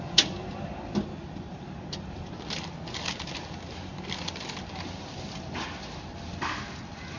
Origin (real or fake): real